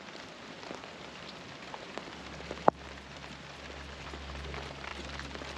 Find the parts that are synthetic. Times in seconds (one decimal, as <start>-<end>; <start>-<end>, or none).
0.0-4.9